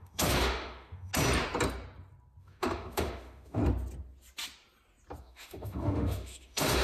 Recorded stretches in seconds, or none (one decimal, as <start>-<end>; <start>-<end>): 1.1-2.4; 3.6-5.2